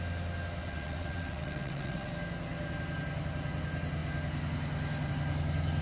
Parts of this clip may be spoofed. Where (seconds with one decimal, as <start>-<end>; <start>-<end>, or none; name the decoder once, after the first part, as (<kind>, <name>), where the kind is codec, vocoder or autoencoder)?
0.6-2.1 (vocoder, WaveNeXt)